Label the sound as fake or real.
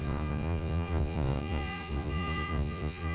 fake